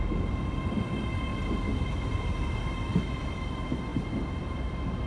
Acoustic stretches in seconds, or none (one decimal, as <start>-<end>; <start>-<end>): 0.0-1.3; 1.9-2.9; 3.5-5.1